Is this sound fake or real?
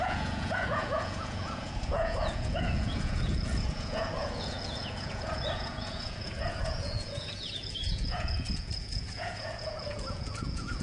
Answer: fake